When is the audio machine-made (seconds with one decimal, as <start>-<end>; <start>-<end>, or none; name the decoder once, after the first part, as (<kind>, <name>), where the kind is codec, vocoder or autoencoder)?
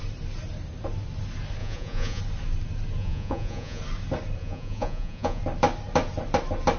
1.6-2.2 (vocoder, Vocos); 3.0-3.8; 4.4-5.4